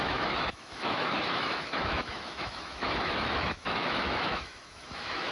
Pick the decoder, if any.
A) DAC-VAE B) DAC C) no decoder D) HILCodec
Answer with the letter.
A